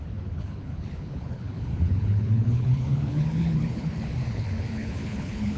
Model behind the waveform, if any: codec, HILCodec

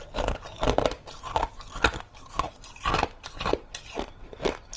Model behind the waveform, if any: none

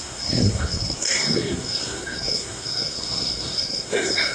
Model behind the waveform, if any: codec, SNAC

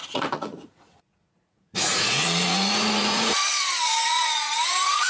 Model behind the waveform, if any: vocoder, Vocos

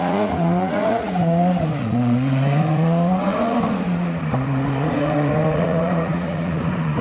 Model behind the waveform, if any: vocoder, Vocos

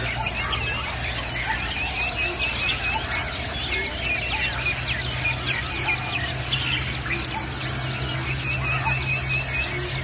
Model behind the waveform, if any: none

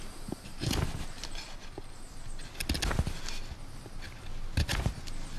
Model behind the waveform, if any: none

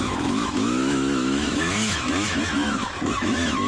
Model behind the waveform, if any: autoencoder, DAC-VAE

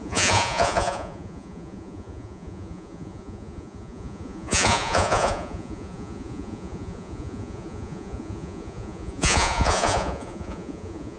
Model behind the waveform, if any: vocoder, Vocos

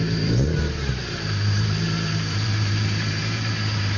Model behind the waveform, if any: vocoder, BigVGAN v2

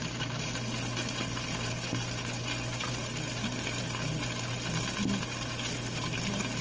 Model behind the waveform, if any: none